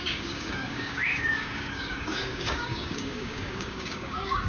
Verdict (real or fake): fake